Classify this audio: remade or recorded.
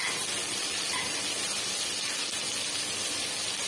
recorded